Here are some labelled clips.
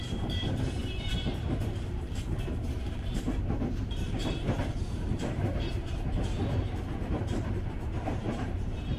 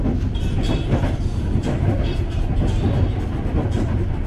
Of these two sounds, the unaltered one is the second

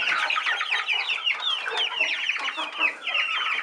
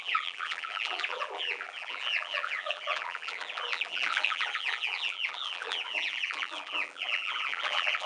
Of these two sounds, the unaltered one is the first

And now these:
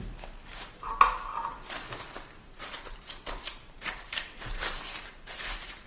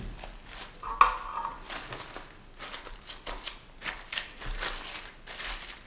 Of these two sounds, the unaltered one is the second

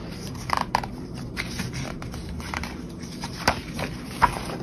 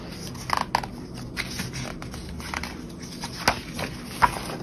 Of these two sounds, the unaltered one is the second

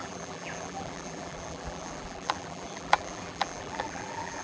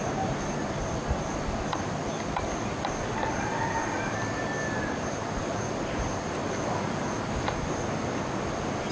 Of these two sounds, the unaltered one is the second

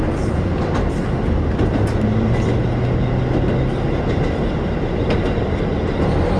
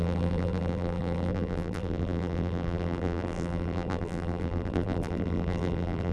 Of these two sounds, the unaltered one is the first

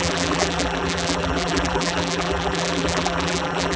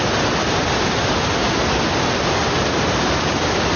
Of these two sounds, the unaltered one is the second